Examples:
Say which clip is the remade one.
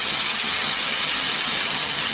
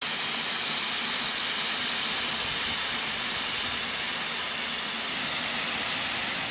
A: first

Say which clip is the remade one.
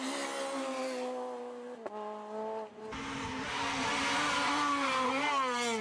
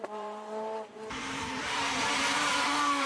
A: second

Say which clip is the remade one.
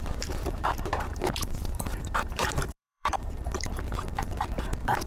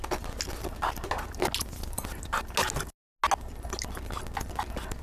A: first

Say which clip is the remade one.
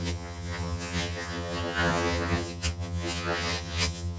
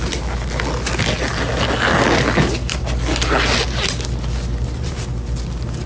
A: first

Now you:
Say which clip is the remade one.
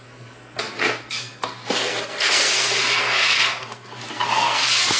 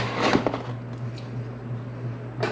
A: first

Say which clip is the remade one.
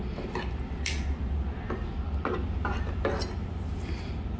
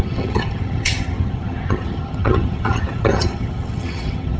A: second